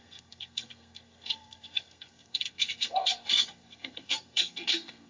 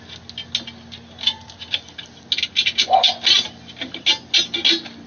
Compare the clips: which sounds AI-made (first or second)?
first